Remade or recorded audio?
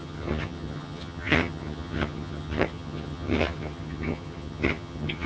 remade